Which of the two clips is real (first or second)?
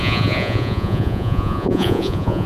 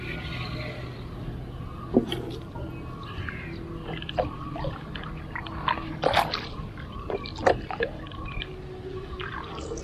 second